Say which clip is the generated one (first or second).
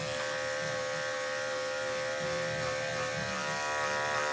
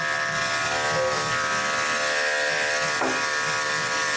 second